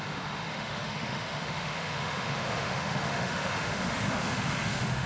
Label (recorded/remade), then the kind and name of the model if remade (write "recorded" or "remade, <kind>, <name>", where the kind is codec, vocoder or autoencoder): remade, autoencoder, DAC-VAE